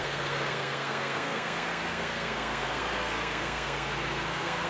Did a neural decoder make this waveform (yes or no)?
yes